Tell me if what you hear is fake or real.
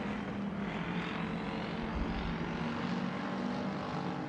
real